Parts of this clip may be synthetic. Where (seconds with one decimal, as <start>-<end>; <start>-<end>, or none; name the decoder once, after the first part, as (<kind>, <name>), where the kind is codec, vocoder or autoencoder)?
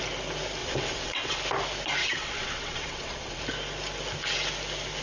0.6-1.4 (vocoder, WaveNeXt); 2.0-3.4